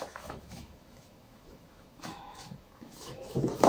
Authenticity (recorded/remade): remade